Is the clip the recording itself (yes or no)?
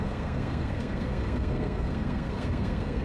no